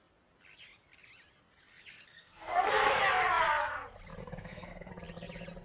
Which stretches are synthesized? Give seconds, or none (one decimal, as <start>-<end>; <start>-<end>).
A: 2.1-2.9; 4.2-4.9